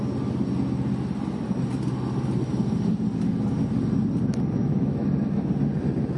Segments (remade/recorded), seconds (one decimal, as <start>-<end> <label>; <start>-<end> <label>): 0.0-4.6 recorded; 4.6-5.5 remade; 5.5-6.2 recorded